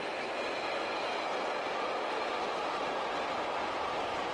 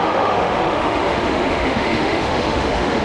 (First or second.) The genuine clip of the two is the first